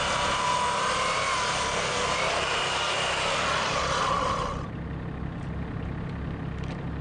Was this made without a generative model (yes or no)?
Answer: yes